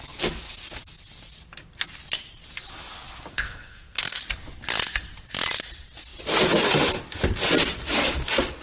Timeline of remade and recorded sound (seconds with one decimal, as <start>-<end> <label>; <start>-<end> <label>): 0.0-3.3 recorded; 3.3-4.2 remade; 4.2-8.6 recorded